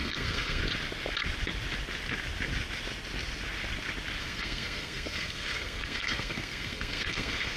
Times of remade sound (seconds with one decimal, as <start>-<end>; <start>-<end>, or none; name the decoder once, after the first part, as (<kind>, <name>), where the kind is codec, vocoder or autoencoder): 0.0-0.6 (codec, SNAC); 4.2-7.6